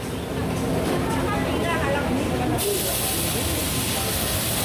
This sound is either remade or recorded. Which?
recorded